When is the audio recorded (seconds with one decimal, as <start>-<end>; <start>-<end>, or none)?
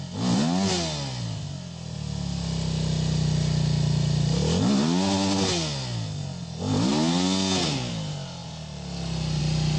0.0-9.8